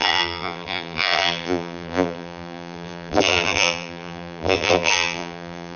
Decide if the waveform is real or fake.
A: fake